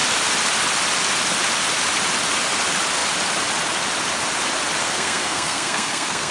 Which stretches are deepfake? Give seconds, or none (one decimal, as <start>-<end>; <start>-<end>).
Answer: 4.8-6.3